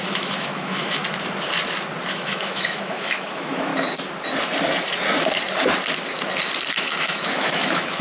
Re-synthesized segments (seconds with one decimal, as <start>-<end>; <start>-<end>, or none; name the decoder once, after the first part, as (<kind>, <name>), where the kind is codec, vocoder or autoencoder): 0.0-1.0 (autoencoder, DAC-VAE); 2.1-3.7; 6.8-8.0